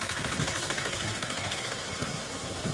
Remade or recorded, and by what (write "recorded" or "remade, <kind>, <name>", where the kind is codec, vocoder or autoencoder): remade, codec, SNAC